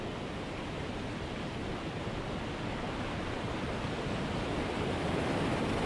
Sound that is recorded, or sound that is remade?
recorded